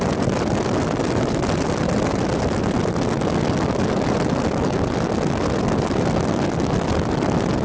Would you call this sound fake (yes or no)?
no